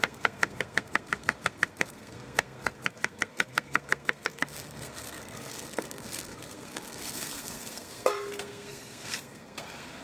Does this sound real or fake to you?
fake